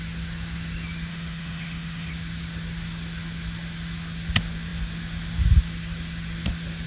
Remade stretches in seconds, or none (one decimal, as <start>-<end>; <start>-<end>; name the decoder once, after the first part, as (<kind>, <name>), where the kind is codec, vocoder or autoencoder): 1.1-2.1 (autoencoder, DAC-VAE)